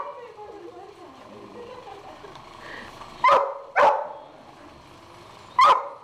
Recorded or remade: recorded